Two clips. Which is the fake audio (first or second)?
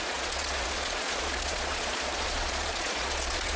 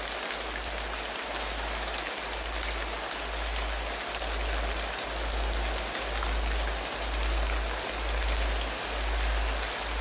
first